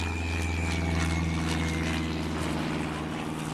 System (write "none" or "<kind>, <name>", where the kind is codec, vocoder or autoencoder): none